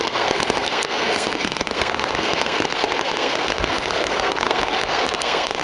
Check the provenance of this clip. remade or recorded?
remade